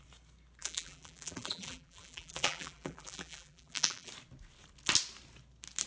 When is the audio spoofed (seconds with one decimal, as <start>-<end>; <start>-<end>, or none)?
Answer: 0.6-4.1